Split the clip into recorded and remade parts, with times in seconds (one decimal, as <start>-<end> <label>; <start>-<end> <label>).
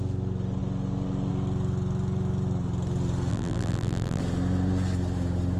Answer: 0.0-3.3 recorded; 3.3-4.2 remade; 4.2-5.6 recorded